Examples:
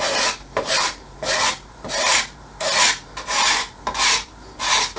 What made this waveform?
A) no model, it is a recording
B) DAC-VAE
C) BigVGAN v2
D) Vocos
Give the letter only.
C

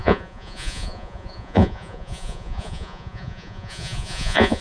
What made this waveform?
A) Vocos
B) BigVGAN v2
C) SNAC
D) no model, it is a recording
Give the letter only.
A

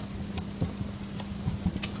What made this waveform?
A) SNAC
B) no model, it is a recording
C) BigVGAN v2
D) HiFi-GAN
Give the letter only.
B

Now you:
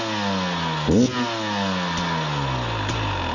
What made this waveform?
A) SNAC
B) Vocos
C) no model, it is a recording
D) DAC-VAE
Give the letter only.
C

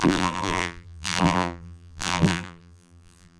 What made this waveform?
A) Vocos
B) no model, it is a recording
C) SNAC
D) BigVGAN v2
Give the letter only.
D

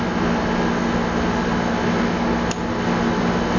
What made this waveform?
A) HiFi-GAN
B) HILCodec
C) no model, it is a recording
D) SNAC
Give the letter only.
C